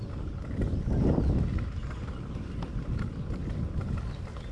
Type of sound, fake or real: real